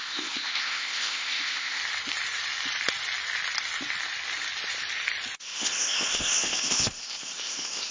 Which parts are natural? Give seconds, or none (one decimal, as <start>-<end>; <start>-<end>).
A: 1.8-5.4